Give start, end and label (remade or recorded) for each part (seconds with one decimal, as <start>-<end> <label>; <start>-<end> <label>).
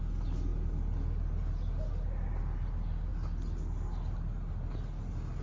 0.0-5.4 recorded